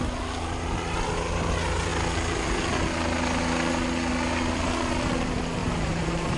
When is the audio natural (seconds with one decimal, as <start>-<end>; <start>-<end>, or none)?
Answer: 0.0-5.6